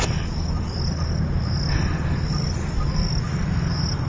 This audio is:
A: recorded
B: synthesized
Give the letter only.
A